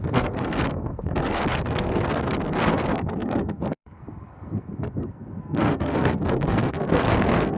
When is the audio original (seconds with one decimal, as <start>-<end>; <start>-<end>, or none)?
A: none